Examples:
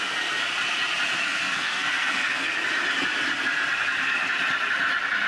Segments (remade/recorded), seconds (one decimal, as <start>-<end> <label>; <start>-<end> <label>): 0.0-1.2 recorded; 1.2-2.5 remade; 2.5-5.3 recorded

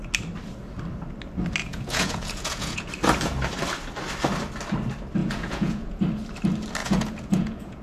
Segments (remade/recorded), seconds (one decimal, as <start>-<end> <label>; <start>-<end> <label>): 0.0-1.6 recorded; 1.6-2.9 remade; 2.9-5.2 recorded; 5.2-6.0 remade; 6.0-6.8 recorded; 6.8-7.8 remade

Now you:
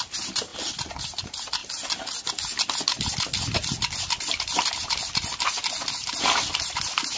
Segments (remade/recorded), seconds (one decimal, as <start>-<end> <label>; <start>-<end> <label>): 0.0-1.6 remade; 1.6-5.9 recorded; 5.9-7.2 remade

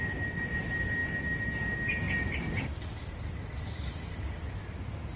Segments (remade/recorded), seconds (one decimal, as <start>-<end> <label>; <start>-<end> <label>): 0.0-5.2 recorded

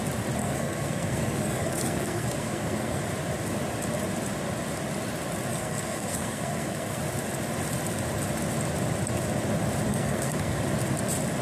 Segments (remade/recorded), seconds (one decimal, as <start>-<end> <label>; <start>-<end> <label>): 0.0-0.4 recorded; 0.4-3.0 remade; 3.0-5.5 recorded; 5.5-7.0 remade; 7.0-9.9 recorded; 9.9-10.6 remade; 10.6-11.4 recorded

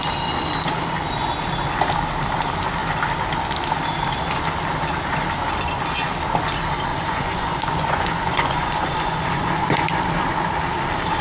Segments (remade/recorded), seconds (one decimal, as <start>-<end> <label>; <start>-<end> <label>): 0.0-6.9 recorded; 6.9-10.0 remade; 10.0-11.2 recorded

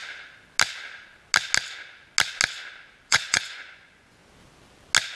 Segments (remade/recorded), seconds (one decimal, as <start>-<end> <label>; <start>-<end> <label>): 0.0-3.1 recorded; 3.1-4.2 remade; 4.2-5.2 recorded